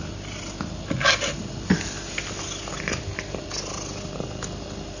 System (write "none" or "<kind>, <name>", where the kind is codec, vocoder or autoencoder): none